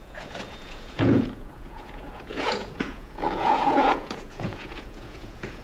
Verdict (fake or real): fake